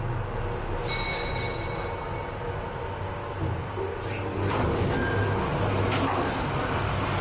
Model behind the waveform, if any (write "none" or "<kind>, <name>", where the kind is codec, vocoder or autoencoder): none